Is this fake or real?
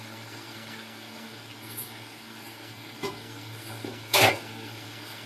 fake